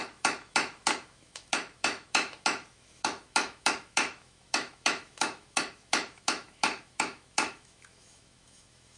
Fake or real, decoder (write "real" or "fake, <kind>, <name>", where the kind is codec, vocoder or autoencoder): fake, autoencoder, DAC-VAE